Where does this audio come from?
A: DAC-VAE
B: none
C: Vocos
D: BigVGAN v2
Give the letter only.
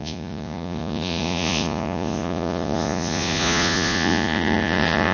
C